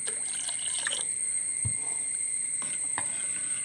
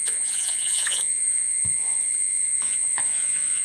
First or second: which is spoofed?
second